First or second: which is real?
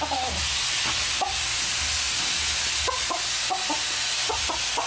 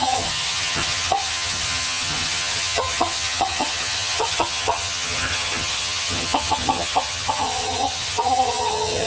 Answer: first